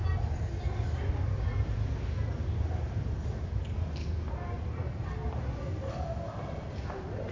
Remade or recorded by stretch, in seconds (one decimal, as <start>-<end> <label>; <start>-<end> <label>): 0.0-7.3 recorded